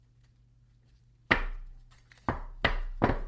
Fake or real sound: real